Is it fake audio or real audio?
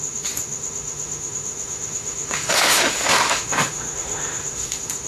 fake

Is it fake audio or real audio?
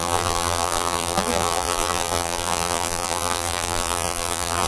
fake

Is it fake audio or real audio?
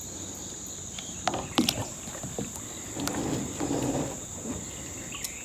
real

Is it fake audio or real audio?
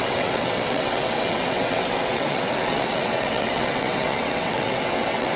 fake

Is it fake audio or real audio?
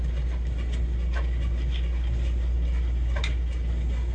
real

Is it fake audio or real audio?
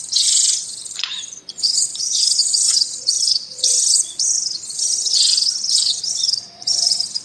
fake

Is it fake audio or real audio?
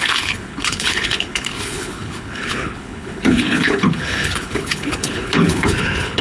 fake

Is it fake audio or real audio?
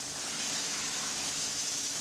fake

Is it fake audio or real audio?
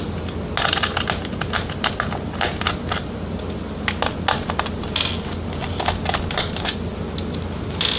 real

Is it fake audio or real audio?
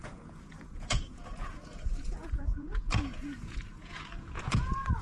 fake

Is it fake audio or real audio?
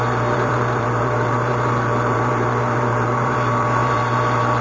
fake